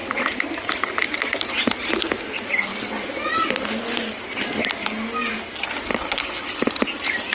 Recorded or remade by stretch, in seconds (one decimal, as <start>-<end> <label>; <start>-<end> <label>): 0.0-5.9 recorded; 5.9-6.7 remade; 6.7-7.3 recorded